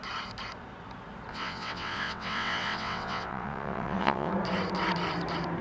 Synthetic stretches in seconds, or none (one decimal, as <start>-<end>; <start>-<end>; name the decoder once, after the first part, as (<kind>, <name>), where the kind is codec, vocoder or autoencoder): 1.3-4.3 (vocoder, WaveNeXt)